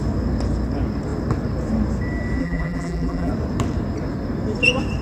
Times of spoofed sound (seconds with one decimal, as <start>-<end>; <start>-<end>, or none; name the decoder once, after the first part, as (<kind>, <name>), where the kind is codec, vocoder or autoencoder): 2.4-3.3 (vocoder, BigVGAN v2)